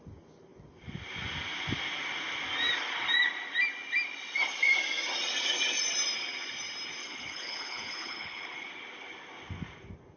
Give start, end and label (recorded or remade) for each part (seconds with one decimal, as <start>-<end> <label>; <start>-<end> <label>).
0.0-7.0 recorded; 7.0-8.7 remade; 8.7-10.2 recorded